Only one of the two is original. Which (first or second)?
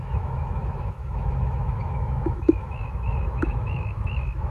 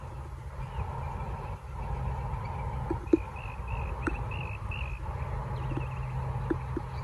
second